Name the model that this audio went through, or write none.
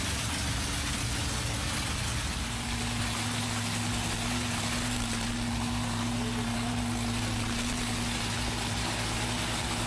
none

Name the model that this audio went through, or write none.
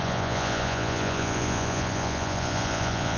vocoder, Vocos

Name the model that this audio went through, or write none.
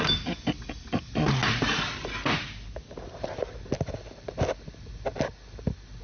none